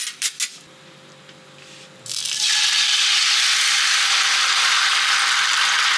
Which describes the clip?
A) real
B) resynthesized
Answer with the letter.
A